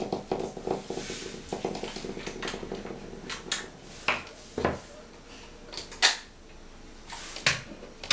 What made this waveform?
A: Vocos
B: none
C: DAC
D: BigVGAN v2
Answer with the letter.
B